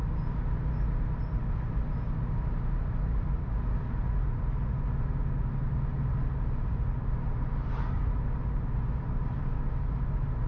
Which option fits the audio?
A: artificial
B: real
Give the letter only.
B